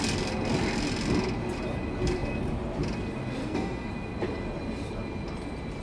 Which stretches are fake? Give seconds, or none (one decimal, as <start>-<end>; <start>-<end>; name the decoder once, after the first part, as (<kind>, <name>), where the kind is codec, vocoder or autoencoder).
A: 3.4-3.9 (codec, SNAC)